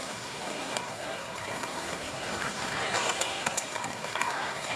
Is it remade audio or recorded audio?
remade